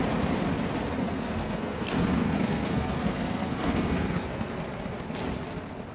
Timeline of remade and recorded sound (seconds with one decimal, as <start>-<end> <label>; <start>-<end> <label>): 0.0-1.0 recorded; 1.0-4.5 remade; 4.5-5.9 recorded